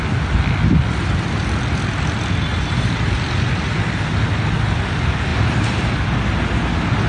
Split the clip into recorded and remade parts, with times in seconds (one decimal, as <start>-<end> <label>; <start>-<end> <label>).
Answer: 0.0-2.5 recorded; 2.5-3.8 remade; 3.8-5.3 recorded; 5.3-6.0 remade; 6.0-7.1 recorded